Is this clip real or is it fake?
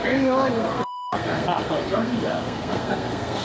fake